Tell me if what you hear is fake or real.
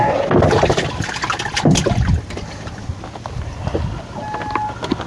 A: real